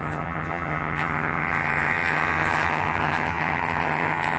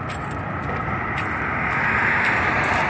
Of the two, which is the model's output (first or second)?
first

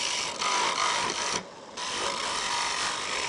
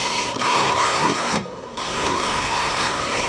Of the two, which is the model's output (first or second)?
second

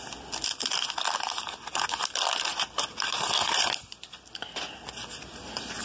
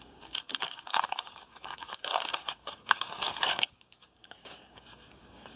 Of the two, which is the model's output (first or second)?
second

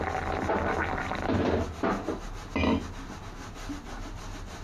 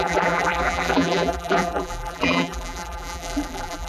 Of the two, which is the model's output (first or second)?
second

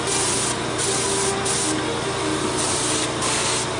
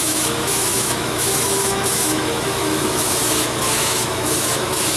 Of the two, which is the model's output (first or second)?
second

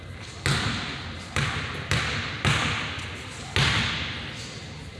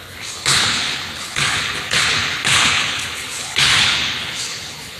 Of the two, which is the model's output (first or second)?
second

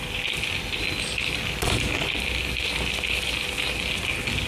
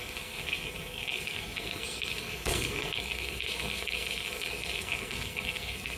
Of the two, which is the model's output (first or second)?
second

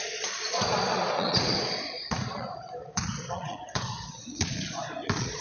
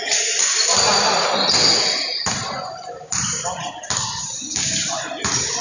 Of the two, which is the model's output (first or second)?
first